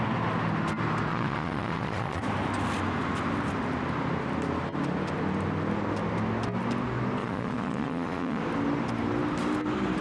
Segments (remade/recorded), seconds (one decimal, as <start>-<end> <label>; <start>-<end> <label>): 0.0-1.1 recorded; 1.1-2.2 remade; 2.2-7.2 recorded; 7.2-8.4 remade; 8.4-10.0 recorded